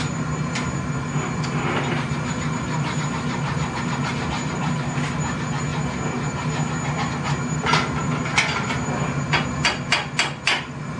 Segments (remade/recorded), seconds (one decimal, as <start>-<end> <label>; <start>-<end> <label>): 0.0-11.0 recorded